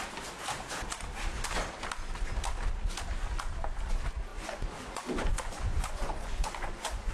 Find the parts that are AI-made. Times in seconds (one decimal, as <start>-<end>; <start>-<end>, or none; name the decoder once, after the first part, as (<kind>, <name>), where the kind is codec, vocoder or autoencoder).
4.3-7.1 (vocoder, Vocos)